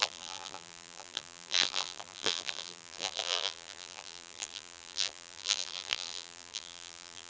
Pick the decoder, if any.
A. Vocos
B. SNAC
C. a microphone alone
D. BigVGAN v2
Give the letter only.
D